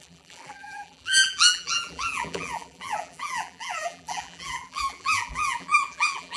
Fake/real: fake